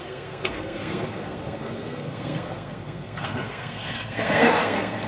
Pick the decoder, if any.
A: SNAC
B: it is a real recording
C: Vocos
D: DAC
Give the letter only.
A